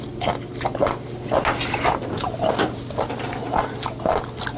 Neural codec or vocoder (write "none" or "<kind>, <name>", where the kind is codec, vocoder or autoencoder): none